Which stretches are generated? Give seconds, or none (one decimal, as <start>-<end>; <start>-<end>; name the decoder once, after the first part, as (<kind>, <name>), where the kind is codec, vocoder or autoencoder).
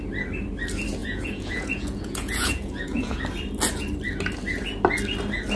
1.0-3.2 (vocoder, Vocos)